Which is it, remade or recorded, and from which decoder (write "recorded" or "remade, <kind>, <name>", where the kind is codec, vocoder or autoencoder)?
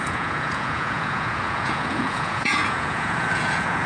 remade, vocoder, Vocos